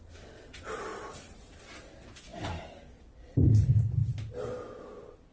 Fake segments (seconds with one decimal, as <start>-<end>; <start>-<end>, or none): 0.9-1.6